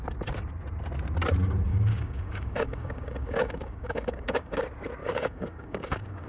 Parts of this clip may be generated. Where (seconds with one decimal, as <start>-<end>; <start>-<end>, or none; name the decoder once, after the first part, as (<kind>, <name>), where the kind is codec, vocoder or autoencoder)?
1.7-4.6 (codec, DAC); 5.0-6.3